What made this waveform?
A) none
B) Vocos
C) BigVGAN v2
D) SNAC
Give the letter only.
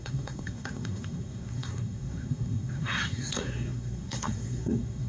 D